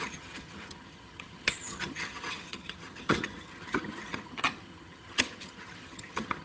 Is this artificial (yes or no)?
yes